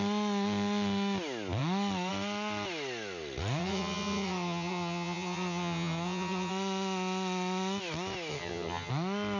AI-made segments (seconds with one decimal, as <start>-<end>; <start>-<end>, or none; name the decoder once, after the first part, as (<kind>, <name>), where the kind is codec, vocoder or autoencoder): 3.6-6.5 (vocoder, HiFi-GAN); 8.3-8.9